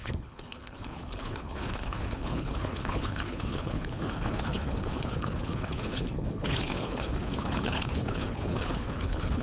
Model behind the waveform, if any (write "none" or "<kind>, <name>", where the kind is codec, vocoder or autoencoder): codec, HILCodec